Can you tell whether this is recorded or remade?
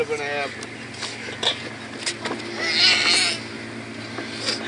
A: recorded